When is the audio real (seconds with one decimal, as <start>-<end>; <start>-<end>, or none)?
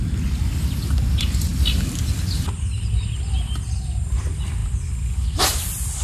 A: 0.0-6.0